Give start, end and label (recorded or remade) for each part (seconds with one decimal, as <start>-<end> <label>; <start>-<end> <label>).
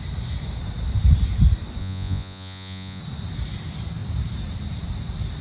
0.0-1.8 recorded; 1.8-3.0 remade; 3.0-5.4 recorded